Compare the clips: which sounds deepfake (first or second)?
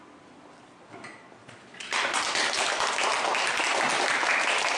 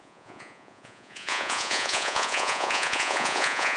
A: second